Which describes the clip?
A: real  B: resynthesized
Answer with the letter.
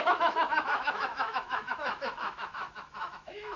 B